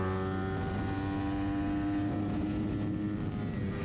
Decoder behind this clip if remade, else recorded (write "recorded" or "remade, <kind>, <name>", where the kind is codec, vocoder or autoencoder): recorded